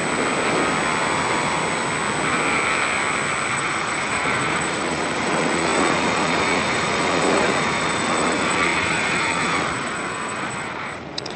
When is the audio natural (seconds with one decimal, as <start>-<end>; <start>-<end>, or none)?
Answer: 0.0-3.5

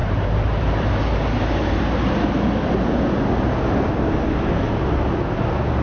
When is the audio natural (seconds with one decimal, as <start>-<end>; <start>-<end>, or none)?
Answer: 2.2-5.8

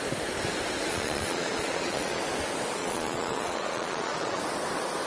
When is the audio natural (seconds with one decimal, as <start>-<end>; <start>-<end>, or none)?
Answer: 0.0-0.9; 2.2-2.8; 4.4-5.1

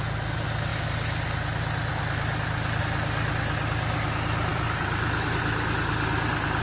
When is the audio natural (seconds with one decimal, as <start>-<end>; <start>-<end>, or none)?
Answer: 0.0-4.5; 5.4-6.6

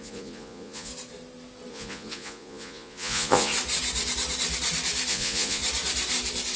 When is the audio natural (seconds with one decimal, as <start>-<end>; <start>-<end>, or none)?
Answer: 0.9-1.7; 3.5-5.1; 5.6-6.6

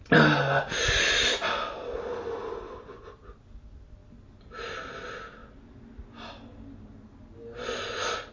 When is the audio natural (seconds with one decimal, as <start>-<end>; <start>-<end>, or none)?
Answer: 0.0-8.3